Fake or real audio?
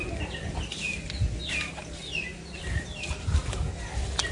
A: real